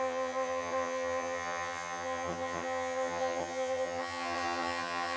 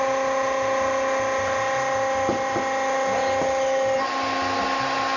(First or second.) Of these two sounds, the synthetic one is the first